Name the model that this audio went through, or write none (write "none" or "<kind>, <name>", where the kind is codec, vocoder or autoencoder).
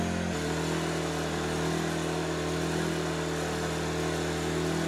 none